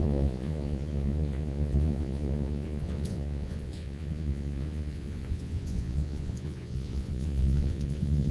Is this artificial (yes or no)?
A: yes